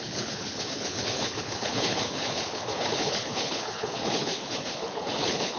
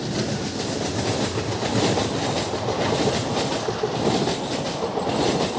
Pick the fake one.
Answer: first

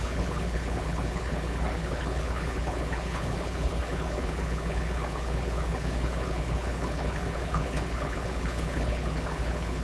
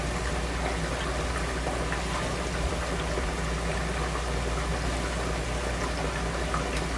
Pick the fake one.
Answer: first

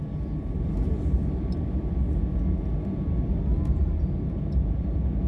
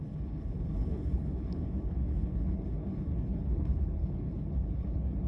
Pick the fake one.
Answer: second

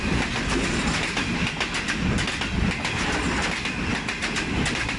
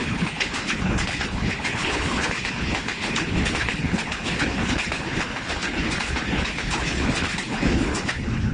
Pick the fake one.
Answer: second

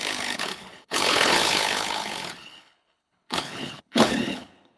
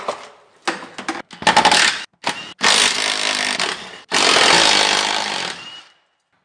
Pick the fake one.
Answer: first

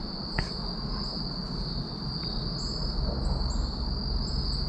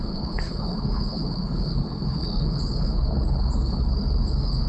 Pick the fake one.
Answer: second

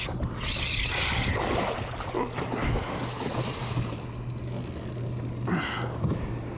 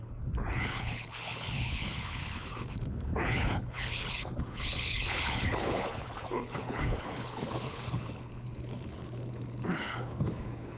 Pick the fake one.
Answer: second